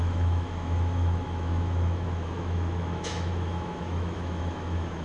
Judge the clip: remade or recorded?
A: remade